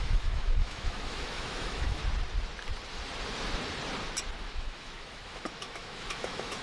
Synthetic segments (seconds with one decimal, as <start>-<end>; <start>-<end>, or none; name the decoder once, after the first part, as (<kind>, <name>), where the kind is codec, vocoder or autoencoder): 0.0-2.0 (autoencoder, DAC-VAE); 4.4-6.6